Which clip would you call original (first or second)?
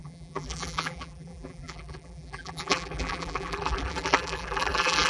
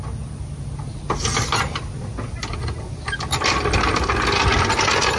second